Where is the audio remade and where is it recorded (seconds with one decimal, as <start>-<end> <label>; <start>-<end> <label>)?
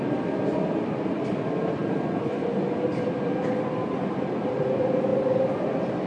0.0-5.1 remade; 5.1-6.1 recorded